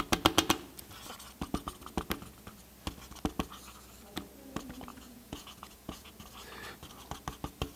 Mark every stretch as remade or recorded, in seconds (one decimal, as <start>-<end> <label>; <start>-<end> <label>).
0.0-4.9 recorded; 4.9-6.1 remade; 6.1-7.8 recorded